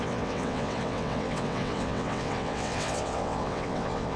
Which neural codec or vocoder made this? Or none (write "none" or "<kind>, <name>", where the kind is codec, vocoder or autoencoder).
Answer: vocoder, WaveNeXt